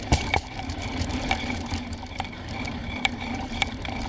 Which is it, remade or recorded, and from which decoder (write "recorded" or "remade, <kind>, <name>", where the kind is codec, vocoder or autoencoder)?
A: remade, vocoder, BigVGAN v2